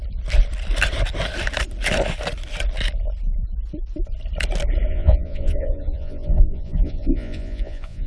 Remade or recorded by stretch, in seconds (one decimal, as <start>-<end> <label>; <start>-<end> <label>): 0.0-4.9 recorded; 4.9-8.1 remade